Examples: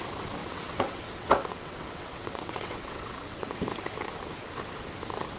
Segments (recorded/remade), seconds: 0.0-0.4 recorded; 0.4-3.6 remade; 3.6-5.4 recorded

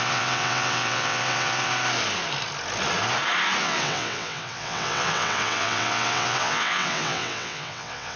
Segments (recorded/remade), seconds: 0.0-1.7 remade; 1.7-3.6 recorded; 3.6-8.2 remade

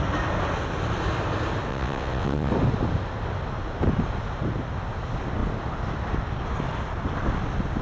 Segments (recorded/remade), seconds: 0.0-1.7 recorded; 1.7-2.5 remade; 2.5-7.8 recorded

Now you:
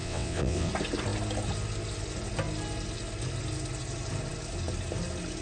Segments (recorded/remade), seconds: 0.0-0.7 remade; 0.7-5.4 recorded